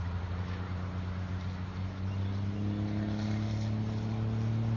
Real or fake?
real